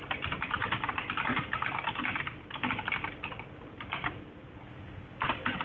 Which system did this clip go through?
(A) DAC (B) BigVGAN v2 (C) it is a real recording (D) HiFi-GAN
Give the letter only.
C